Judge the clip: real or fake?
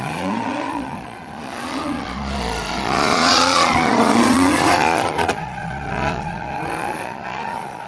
fake